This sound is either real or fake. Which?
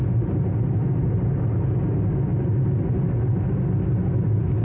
real